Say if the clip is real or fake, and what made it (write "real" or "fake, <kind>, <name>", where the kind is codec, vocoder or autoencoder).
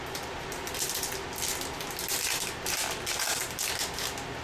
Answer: real